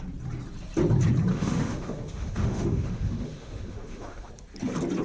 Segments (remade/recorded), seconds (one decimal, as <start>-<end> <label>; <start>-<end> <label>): 0.0-1.3 recorded; 1.3-4.3 remade; 4.3-5.0 recorded